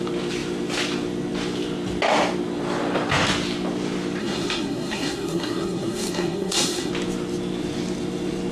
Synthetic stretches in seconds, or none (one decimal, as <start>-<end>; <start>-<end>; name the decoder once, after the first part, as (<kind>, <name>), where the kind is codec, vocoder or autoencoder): 4.2-6.9 (codec, SNAC)